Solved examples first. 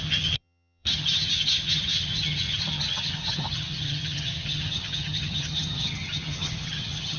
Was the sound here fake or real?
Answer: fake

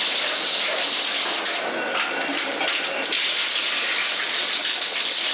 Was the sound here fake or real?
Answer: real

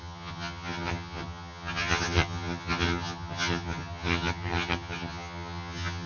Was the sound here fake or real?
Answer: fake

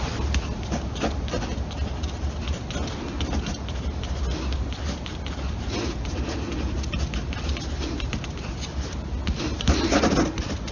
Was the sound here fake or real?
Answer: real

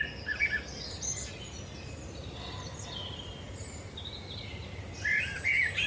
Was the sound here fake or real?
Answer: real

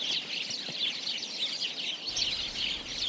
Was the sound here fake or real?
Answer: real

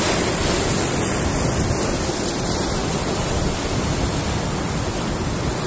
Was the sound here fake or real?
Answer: real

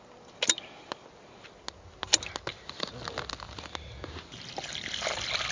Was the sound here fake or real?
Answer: real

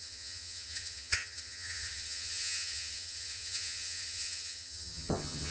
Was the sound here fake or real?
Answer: fake